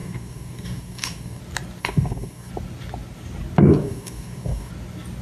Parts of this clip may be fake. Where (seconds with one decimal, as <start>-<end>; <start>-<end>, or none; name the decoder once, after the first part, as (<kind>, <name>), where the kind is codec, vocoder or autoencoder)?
0.0-1.4 (codec, DAC); 1.8-2.5; 3.6-4.7